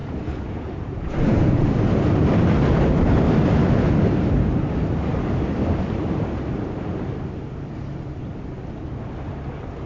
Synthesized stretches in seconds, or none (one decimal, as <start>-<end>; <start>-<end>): 0.0-1.7